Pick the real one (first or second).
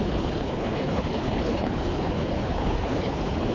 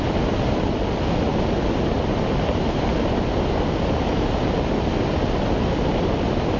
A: second